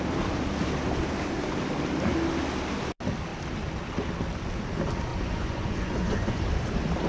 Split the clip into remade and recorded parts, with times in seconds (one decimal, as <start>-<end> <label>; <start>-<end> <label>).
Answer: 0.0-5.1 recorded; 5.1-6.4 remade; 6.4-7.1 recorded